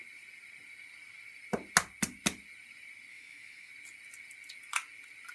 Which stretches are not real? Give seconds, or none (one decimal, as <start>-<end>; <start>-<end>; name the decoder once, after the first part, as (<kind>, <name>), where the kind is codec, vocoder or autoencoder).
3.1-3.7 (autoencoder, DAC-VAE)